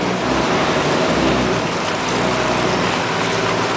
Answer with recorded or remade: recorded